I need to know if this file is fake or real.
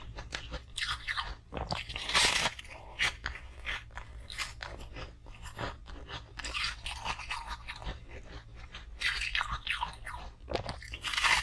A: real